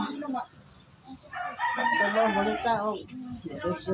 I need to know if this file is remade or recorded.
recorded